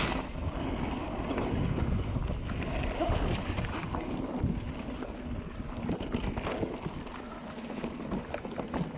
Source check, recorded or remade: recorded